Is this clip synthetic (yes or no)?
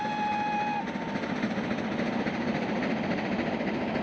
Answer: no